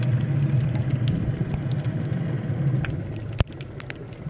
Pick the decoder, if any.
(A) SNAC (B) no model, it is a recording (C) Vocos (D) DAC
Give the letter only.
B